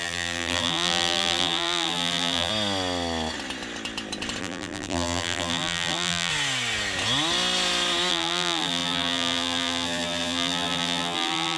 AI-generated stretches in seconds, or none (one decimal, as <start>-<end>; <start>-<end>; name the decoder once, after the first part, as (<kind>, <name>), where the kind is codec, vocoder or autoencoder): 0.0-2.5 (vocoder, BigVGAN v2); 4.4-6.3; 8.1-11.6